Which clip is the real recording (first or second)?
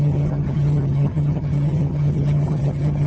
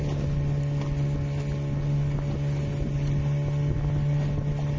second